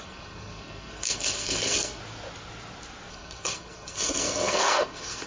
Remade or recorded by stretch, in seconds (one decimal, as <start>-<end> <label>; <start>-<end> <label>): 0.0-2.0 remade; 2.0-3.1 recorded; 3.1-5.3 remade